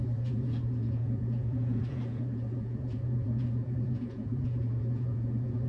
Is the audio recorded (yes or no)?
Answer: no